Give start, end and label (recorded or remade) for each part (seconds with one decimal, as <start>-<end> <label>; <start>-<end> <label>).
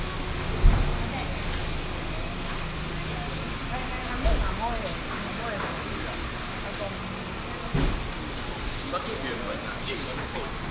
0.0-10.7 recorded